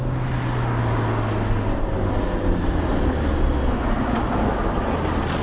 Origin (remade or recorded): recorded